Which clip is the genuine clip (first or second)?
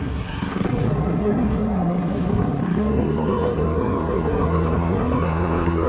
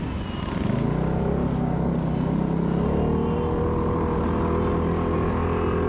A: second